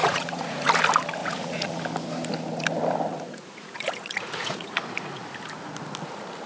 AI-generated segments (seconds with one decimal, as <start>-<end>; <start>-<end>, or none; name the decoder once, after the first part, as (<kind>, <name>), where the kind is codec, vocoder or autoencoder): 0.0-0.7 (vocoder, Vocos); 1.2-1.8; 3.1-5.2